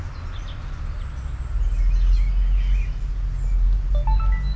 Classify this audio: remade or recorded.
recorded